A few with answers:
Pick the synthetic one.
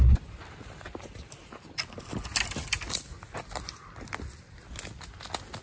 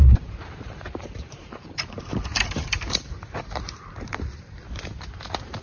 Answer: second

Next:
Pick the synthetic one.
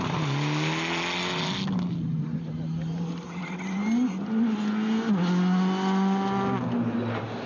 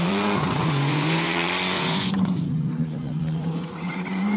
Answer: second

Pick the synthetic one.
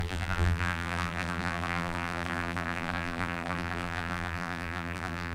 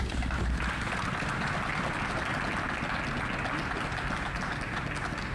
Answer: first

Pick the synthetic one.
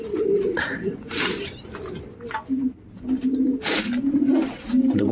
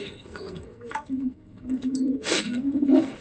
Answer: second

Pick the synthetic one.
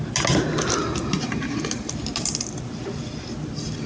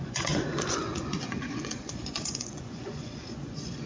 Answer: second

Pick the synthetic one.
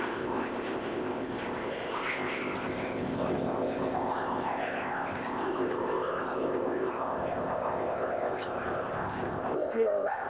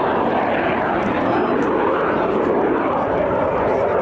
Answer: first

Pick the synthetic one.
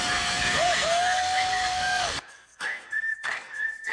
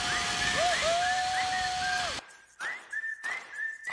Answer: first